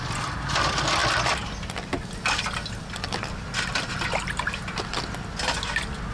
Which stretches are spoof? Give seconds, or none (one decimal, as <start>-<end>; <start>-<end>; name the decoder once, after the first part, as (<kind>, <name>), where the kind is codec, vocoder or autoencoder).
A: none